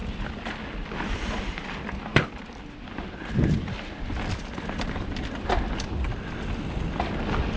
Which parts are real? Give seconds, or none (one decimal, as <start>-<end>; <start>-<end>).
0.0-7.6